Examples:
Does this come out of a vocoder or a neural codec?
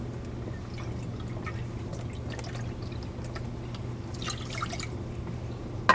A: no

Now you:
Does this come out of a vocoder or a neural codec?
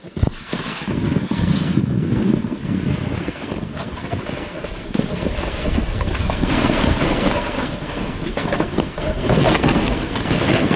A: yes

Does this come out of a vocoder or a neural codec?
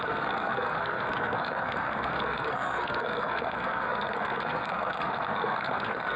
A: yes